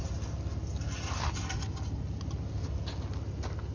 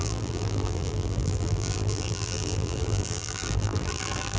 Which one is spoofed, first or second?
second